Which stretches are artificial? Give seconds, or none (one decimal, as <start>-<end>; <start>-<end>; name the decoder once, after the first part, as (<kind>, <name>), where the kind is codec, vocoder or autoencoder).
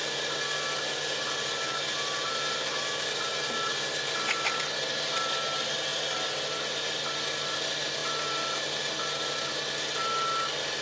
none